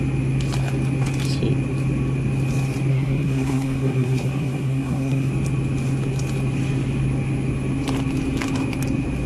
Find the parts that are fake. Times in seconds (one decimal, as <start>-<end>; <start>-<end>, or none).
2.9-5.3